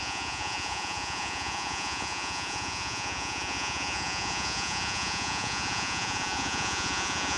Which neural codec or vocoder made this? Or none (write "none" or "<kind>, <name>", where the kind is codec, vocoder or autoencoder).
vocoder, Vocos